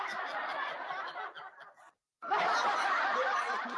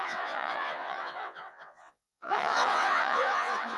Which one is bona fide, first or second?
first